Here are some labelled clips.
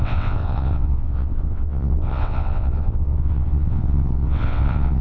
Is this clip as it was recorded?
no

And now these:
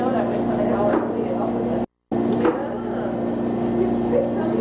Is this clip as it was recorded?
yes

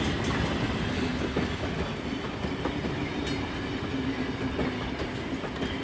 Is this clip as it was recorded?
yes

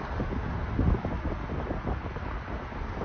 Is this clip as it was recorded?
yes